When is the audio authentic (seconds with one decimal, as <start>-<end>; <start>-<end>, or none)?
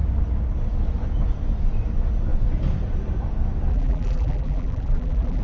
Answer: 0.0-3.7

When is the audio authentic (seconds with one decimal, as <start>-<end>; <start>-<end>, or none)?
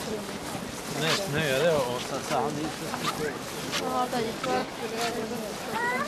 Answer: 0.0-4.6; 5.3-6.1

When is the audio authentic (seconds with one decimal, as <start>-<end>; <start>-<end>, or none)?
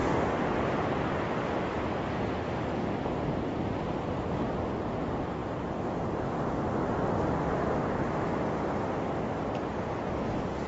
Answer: 0.0-4.3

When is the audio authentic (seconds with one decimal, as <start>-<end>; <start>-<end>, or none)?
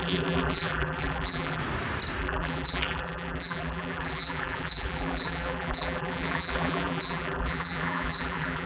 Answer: 1.6-2.2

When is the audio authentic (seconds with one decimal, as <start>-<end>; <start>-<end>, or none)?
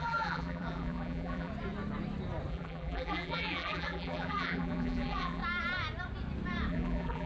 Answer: 1.5-2.5; 5.4-6.7